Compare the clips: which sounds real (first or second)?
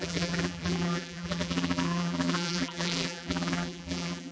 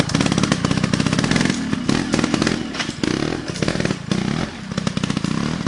second